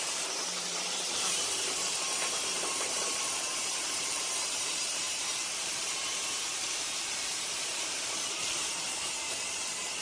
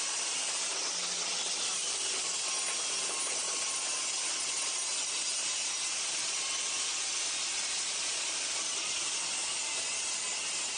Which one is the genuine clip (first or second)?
second